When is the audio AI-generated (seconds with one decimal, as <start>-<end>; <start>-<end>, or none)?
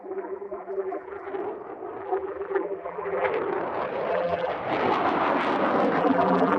0.0-1.3; 2.0-3.3; 4.1-4.5; 6.0-6.6